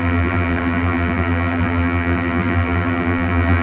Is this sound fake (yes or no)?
yes